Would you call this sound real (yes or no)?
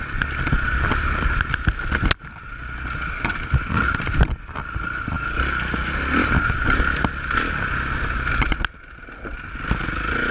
yes